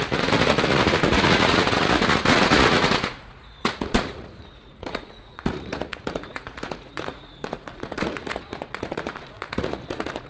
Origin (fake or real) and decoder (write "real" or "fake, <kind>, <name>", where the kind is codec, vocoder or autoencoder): fake, vocoder, Vocos